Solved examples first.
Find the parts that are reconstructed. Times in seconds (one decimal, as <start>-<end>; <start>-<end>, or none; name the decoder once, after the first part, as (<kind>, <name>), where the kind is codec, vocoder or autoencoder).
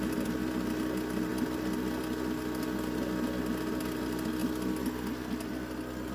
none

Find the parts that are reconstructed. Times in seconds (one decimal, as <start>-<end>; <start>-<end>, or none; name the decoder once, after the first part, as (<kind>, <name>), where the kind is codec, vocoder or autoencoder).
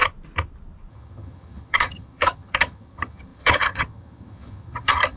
0.9-5.2 (vocoder, HiFi-GAN)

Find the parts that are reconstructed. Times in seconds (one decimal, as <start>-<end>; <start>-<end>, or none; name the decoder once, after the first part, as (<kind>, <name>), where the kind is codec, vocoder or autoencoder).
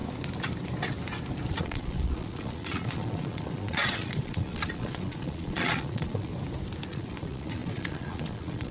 1.6-6.3 (vocoder, Vocos); 6.9-8.7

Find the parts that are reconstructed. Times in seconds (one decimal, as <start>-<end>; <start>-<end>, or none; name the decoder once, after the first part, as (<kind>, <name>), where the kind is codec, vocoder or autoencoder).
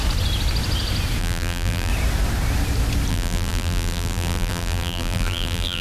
1.2-1.9 (vocoder, BigVGAN v2); 3.1-5.8